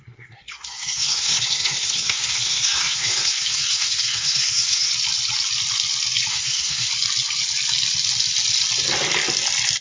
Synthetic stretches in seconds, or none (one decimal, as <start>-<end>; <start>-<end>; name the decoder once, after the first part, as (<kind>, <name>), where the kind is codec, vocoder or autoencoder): 0.0-4.9 (codec, SNAC); 6.3-6.9

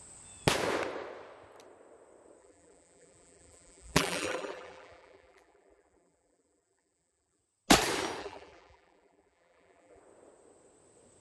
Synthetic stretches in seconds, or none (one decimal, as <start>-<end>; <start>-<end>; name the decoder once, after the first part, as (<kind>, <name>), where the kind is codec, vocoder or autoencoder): 2.4-7.4 (vocoder, BigVGAN v2); 8.2-10.0